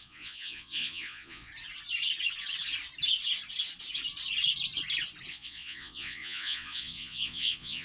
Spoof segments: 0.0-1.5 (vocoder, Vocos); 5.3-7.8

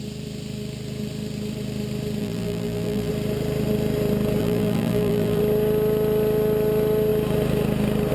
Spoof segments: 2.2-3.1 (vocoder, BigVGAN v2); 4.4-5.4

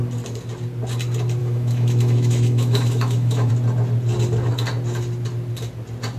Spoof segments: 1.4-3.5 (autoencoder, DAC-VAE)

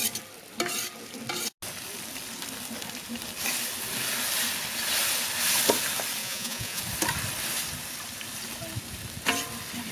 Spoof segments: 6.2-6.8 (vocoder, Vocos)